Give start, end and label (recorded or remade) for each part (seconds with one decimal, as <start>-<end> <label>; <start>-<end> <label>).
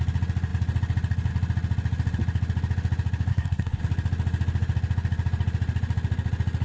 0.0-3.3 recorded; 3.3-3.8 remade; 3.8-6.6 recorded